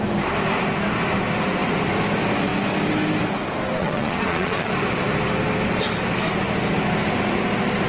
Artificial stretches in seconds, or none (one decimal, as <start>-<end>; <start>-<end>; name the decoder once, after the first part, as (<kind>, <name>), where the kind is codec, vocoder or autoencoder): 3.8-4.7 (vocoder, Vocos)